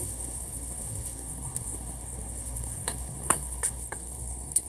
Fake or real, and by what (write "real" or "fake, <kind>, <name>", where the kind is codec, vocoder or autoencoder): fake, codec, SNAC